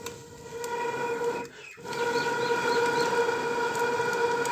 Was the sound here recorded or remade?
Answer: recorded